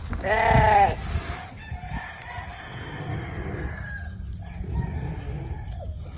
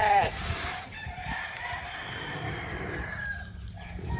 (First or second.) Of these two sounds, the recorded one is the first